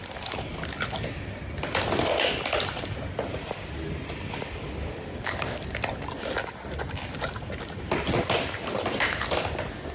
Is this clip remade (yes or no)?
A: no